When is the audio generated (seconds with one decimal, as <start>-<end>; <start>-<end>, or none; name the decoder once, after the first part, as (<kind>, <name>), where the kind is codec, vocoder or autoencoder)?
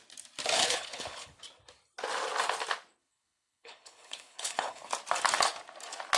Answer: 0.6-1.4 (codec, HILCodec); 3.0-4.9